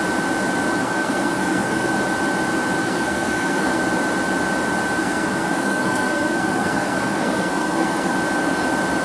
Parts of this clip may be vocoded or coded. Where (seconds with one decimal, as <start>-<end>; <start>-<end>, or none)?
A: 0.8-1.9; 2.8-3.8; 5.0-8.1